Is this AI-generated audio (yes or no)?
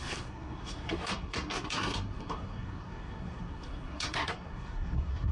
yes